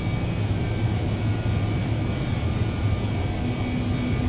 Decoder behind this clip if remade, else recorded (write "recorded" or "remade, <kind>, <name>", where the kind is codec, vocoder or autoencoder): recorded